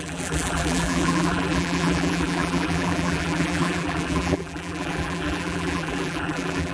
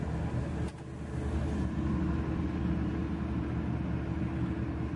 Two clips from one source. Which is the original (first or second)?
second